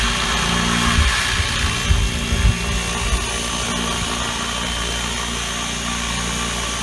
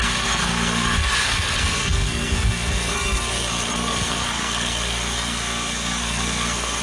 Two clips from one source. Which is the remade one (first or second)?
second